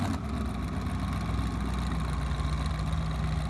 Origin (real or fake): real